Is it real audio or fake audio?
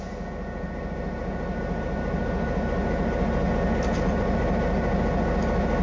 real